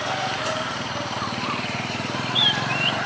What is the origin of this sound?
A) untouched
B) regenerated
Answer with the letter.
B